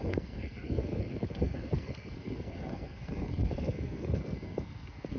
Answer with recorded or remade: remade